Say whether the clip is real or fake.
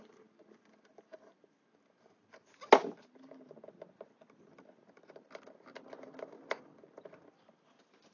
real